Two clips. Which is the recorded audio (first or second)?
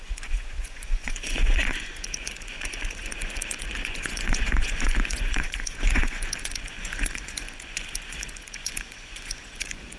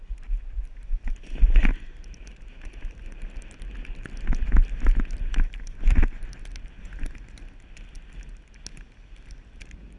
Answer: second